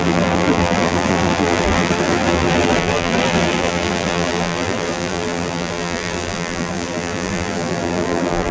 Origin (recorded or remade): remade